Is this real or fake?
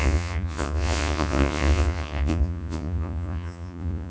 fake